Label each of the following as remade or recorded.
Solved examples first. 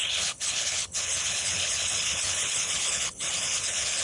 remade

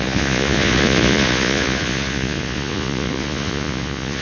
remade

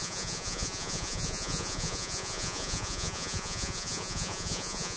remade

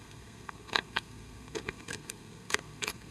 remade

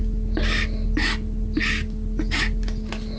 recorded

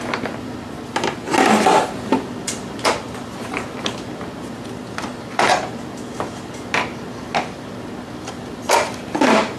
recorded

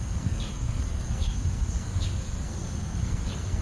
remade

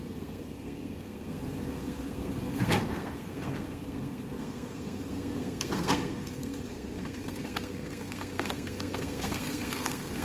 remade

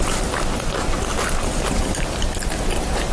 recorded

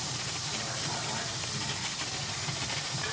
remade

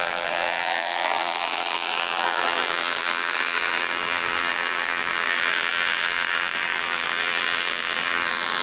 remade